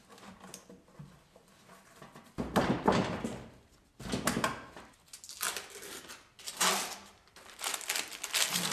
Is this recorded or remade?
recorded